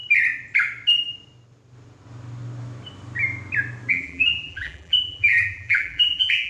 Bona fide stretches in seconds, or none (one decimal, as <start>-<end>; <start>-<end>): 0.0-3.9